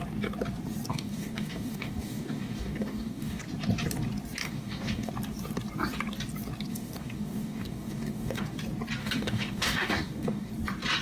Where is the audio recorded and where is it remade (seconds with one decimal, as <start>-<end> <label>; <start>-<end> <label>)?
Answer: 0.0-0.9 recorded; 0.9-3.4 remade; 3.4-4.4 recorded; 4.4-5.1 remade; 5.1-6.7 recorded; 6.7-8.6 remade; 8.6-9.0 recorded; 9.0-10.5 remade; 10.5-11.0 recorded